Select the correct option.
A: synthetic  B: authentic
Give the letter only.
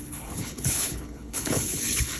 A